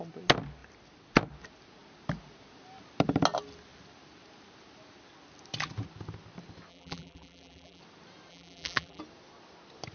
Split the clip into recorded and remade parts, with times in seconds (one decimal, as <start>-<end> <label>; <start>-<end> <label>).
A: 0.0-6.7 recorded; 6.7-7.8 remade; 7.8-8.3 recorded; 8.3-9.0 remade; 9.0-9.9 recorded